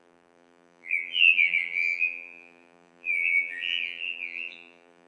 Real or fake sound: fake